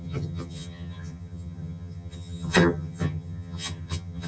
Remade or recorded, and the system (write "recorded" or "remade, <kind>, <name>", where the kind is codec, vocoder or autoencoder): remade, vocoder, HiFi-GAN